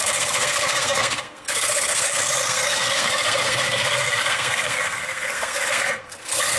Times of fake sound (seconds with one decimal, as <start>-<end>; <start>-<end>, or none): 0.0-6.6